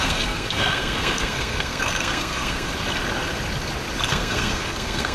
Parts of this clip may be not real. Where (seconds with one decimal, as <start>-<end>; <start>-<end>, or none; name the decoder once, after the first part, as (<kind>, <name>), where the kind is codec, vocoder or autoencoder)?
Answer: 0.0-2.7 (codec, SNAC); 4.1-5.1